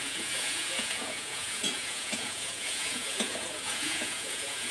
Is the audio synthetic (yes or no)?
yes